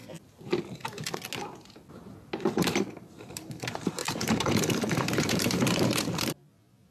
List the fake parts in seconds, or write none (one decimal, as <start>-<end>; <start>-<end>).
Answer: 3.0-6.9